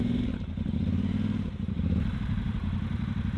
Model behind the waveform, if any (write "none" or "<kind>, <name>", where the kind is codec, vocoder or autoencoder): vocoder, BigVGAN v2